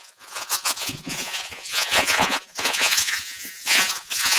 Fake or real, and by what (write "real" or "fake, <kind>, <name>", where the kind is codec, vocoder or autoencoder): fake, vocoder, Vocos